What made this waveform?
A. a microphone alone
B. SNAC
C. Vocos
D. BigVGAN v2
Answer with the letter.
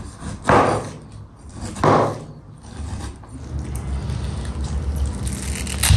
A